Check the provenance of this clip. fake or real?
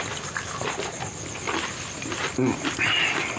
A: real